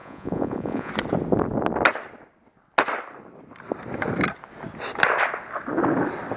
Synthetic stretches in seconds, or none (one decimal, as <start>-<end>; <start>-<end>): 0.0-0.9